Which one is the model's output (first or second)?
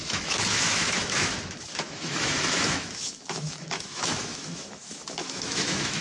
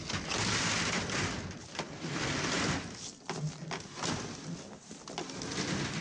first